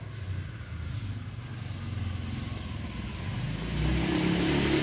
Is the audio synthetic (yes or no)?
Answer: no